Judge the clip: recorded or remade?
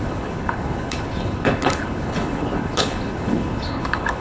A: remade